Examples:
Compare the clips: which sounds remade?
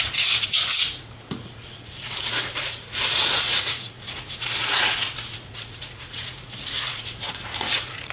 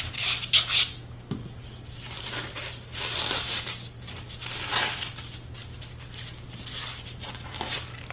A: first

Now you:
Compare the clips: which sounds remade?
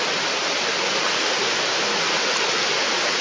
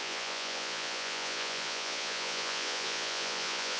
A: second